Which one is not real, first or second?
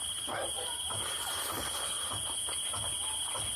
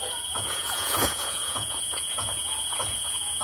second